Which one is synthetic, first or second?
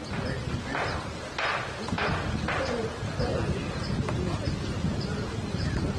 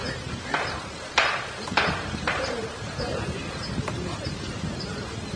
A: second